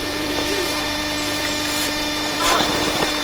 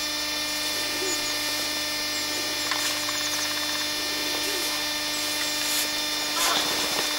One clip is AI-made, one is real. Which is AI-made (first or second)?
first